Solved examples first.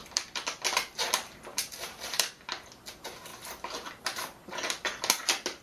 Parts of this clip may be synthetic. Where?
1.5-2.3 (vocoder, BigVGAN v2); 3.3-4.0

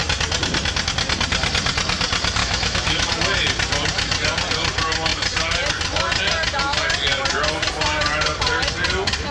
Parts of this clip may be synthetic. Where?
2.4-3.1 (autoencoder, DAC-VAE)

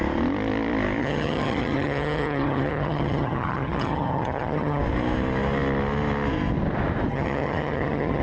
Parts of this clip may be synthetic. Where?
1.0-4.8 (vocoder, HiFi-GAN); 7.1-8.2